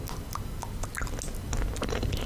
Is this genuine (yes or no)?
yes